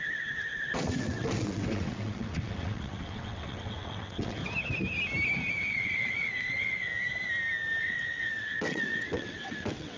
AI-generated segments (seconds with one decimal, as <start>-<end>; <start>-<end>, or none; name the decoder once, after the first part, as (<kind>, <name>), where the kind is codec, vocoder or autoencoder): 0.0-4.4 (vocoder, WaveNeXt); 5.7-6.9; 7.8-10.0